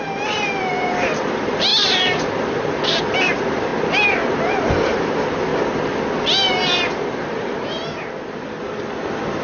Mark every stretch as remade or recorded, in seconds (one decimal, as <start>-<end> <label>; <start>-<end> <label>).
0.0-3.7 remade; 3.7-4.3 recorded; 4.3-5.5 remade; 5.5-6.2 recorded; 6.2-9.4 remade